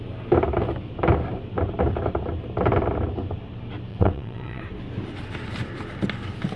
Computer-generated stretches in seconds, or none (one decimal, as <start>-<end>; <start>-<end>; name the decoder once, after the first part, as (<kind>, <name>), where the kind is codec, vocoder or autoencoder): 3.9-4.6 (vocoder, WaveNeXt)

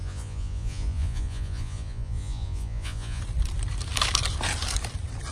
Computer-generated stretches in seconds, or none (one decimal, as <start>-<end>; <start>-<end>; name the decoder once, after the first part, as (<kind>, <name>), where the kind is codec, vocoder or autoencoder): 0.0-3.2 (vocoder, Vocos)

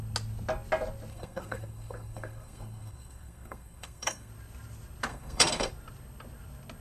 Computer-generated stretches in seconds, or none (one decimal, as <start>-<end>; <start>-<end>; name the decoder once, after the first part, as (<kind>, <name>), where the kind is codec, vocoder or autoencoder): 1.1-4.3 (codec, SNAC); 5.1-5.7

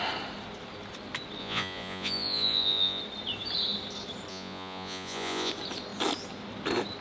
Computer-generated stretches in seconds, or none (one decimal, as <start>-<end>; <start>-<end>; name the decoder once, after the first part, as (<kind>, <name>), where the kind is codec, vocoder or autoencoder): 1.4-3.0 (vocoder, Vocos); 4.3-5.5

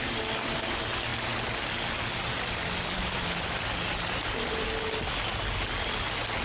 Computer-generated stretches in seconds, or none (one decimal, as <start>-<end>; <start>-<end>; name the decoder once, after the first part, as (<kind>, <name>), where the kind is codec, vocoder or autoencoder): none